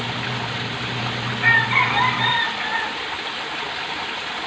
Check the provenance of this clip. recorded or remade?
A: recorded